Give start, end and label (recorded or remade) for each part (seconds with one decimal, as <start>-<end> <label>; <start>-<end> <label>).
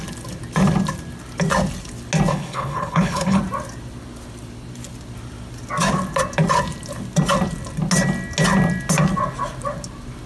0.0-2.3 recorded; 2.3-3.4 remade; 3.4-10.3 recorded